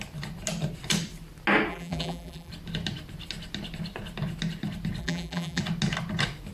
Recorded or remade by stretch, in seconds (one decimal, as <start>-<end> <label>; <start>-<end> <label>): 0.0-1.7 recorded; 1.7-2.5 remade; 2.5-5.0 recorded; 5.0-5.6 remade; 5.6-6.5 recorded